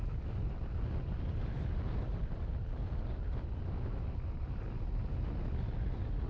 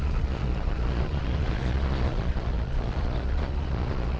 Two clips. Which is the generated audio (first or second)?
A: second